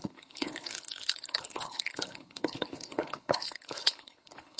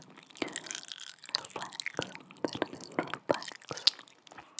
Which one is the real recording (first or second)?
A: second